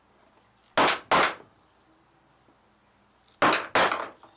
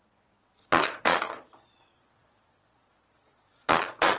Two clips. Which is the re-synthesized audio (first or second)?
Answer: second